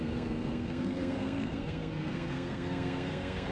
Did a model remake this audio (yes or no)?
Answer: yes